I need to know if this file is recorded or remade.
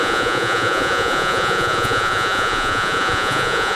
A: remade